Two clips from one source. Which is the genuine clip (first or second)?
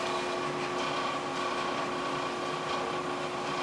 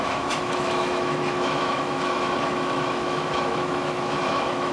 first